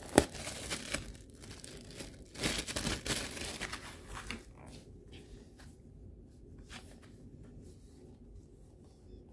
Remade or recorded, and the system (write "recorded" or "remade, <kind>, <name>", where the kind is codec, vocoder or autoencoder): recorded